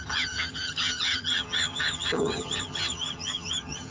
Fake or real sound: fake